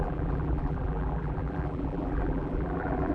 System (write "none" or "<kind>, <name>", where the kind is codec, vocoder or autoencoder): vocoder, BigVGAN v2